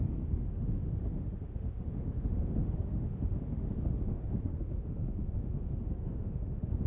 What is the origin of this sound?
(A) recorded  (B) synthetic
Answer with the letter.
B